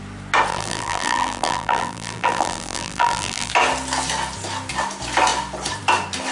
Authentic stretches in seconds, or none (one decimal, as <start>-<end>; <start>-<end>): 0.0-0.5; 3.5-6.3